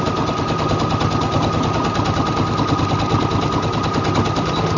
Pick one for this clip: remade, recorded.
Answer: recorded